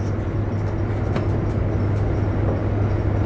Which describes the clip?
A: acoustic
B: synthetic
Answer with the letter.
A